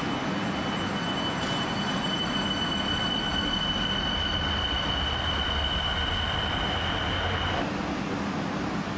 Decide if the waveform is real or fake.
real